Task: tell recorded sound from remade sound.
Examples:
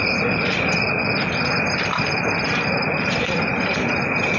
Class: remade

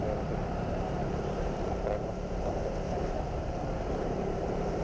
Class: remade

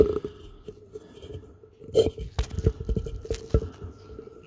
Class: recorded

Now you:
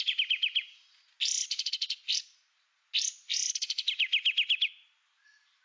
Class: recorded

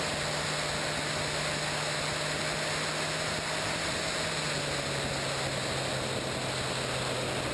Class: recorded